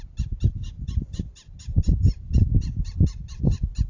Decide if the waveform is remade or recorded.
recorded